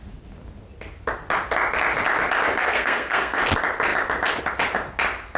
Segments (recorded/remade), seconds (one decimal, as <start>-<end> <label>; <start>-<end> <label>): 0.0-2.6 recorded; 2.6-3.4 remade; 3.4-5.4 recorded